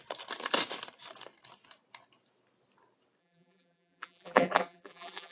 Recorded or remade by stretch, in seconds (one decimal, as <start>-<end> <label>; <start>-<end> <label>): 0.0-3.2 recorded; 3.2-5.3 remade